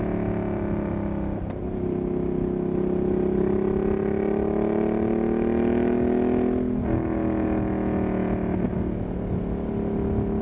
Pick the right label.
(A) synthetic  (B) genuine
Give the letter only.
B